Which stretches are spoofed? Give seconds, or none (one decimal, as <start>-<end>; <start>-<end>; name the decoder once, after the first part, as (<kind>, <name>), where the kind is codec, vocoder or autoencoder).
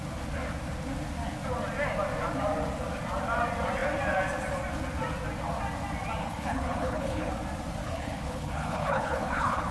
6.2-7.3 (codec, HILCodec); 7.8-9.7